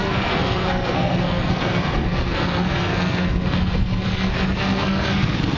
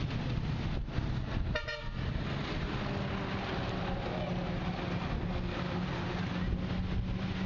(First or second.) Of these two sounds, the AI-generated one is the first